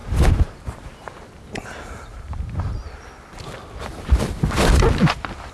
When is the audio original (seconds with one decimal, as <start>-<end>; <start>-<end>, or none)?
1.1-2.1; 3.0-5.5